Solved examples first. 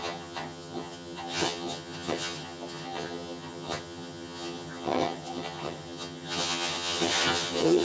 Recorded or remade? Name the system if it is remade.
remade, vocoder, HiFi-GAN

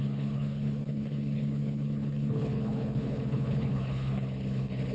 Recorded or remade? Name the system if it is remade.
remade, codec, HILCodec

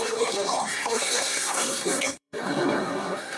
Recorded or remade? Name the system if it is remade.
remade, codec, SNAC